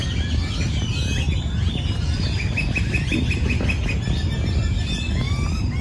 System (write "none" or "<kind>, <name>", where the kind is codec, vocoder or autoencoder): none